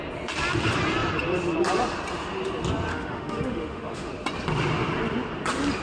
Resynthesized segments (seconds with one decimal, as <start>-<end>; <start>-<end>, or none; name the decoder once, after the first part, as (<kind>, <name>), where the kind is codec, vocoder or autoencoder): 2.9-4.1 (autoencoder, DAC-VAE)